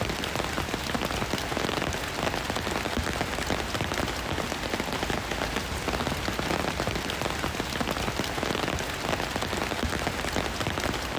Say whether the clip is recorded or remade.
recorded